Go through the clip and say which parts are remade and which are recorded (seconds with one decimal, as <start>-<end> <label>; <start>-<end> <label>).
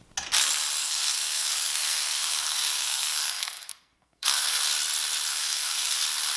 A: 0.0-0.8 recorded; 0.8-4.6 remade; 4.6-5.3 recorded; 5.3-6.0 remade; 6.0-6.4 recorded